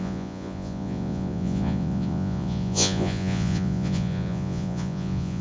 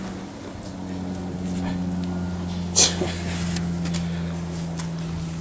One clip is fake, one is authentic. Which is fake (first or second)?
first